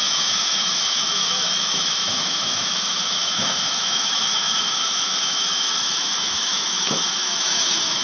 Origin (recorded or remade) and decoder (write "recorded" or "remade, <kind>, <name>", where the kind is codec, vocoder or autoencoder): remade, autoencoder, DAC-VAE